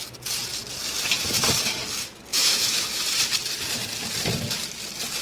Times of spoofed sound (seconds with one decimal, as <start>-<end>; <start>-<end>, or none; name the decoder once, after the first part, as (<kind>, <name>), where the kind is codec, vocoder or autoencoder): 2.3-3.0 (autoencoder, DAC-VAE)